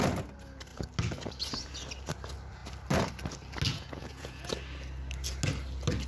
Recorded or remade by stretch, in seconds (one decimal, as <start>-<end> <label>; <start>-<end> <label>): 0.0-3.7 recorded; 3.7-4.5 remade; 4.5-6.1 recorded